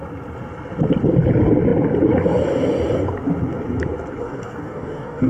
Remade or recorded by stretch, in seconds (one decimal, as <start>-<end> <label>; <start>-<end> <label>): 0.0-4.2 recorded; 4.2-5.3 remade